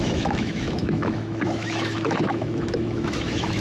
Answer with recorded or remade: remade